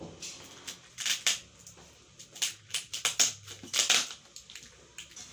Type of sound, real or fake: real